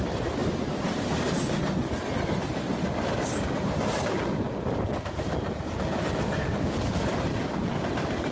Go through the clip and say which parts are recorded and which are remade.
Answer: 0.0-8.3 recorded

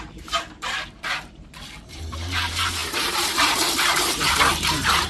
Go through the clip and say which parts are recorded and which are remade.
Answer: 0.0-5.1 remade